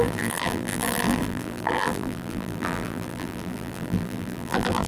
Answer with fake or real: fake